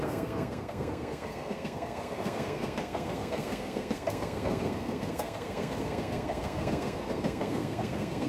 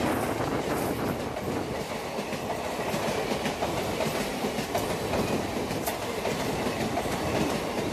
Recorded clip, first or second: second